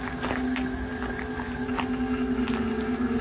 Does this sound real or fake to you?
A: real